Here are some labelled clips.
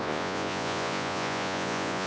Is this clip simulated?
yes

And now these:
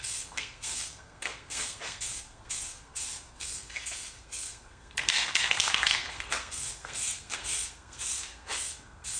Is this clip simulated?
yes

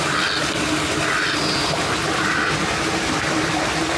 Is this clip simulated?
no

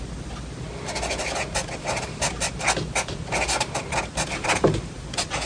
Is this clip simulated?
no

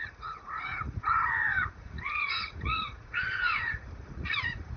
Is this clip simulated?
yes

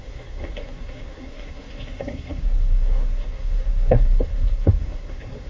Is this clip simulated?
yes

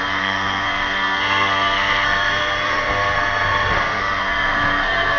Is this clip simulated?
yes